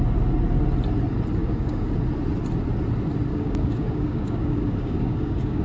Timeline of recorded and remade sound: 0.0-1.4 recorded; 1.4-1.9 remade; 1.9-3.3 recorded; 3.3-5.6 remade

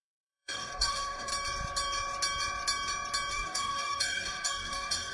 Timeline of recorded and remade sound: 0.0-1.3 remade; 1.3-3.3 recorded; 3.3-5.1 remade

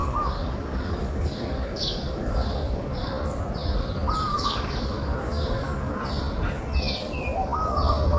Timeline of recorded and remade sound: 0.0-3.1 remade; 3.1-4.3 recorded; 4.3-6.0 remade; 6.0-8.2 recorded

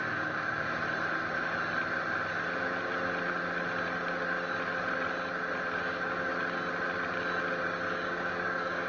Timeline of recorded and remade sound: 0.0-0.8 remade; 0.8-5.8 recorded; 5.8-6.3 remade; 6.3-7.6 recorded; 7.6-8.9 remade

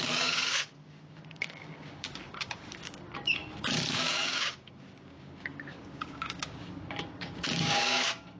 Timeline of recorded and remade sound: 0.0-8.4 remade

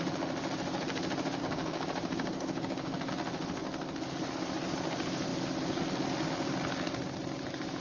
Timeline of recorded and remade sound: 0.0-1.4 recorded; 1.4-3.1 remade; 3.1-7.8 recorded

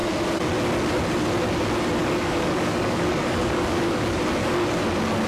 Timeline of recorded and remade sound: 0.0-2.0 recorded; 2.0-4.2 remade; 4.2-5.3 recorded

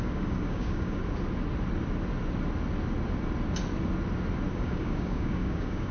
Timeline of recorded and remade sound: 0.0-1.0 remade; 1.0-4.5 recorded; 4.5-5.9 remade